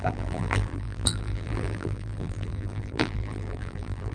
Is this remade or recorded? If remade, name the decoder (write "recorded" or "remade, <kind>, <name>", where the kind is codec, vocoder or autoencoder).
remade, vocoder, BigVGAN v2